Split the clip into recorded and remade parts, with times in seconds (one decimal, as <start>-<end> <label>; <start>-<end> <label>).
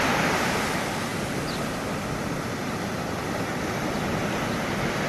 0.0-5.1 recorded